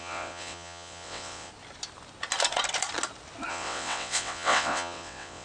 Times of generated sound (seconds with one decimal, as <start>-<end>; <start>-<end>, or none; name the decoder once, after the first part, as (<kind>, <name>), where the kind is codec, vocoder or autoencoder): 0.0-1.5 (vocoder, WaveNeXt); 3.5-5.4

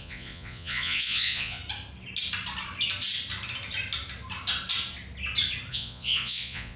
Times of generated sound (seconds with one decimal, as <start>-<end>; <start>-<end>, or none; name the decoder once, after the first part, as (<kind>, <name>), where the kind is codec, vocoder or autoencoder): 0.0-1.6 (vocoder, Vocos); 5.7-6.8